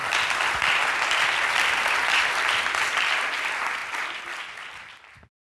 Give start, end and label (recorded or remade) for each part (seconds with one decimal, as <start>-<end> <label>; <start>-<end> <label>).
0.0-5.5 recorded